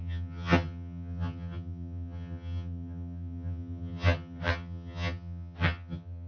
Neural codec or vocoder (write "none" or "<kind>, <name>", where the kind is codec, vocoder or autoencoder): vocoder, HiFi-GAN